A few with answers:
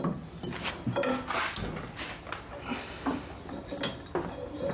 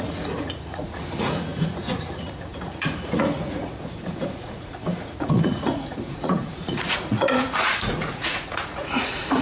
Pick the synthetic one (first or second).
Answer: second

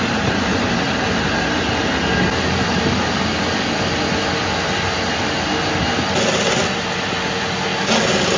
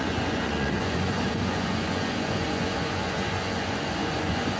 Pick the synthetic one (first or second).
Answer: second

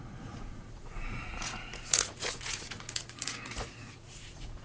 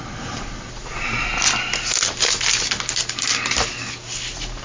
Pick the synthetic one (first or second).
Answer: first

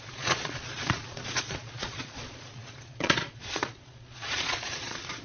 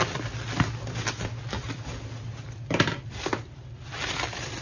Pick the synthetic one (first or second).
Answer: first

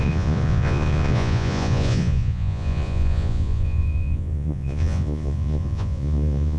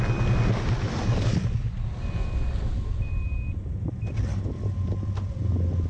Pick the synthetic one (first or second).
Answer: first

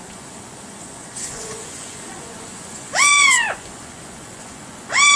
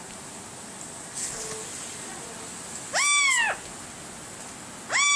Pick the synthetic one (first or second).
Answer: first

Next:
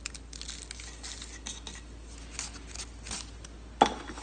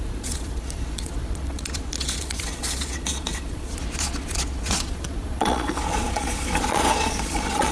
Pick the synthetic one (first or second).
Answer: second